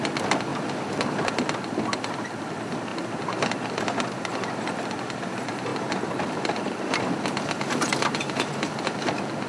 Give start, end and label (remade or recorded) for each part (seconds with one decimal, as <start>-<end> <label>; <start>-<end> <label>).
0.0-9.5 recorded